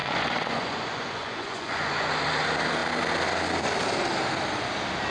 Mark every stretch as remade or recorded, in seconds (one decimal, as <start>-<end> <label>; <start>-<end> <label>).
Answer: 0.0-2.1 remade; 2.1-5.1 recorded